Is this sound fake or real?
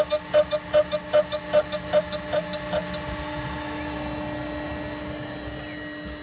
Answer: real